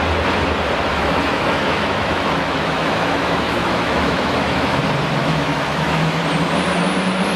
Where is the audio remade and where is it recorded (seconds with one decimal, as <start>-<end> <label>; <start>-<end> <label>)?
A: 0.0-0.9 recorded; 0.9-4.8 remade; 4.8-5.2 recorded; 5.2-6.2 remade; 6.2-7.4 recorded